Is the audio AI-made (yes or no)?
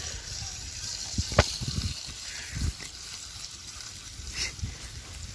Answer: yes